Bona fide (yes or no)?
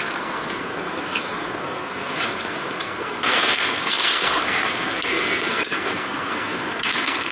no